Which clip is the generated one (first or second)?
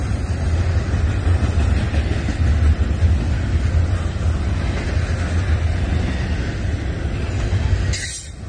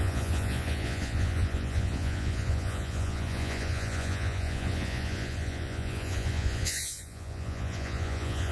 second